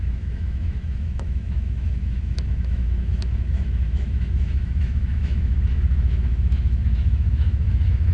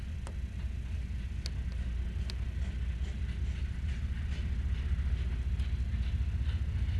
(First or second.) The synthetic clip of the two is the first